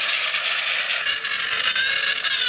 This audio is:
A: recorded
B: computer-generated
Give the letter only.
A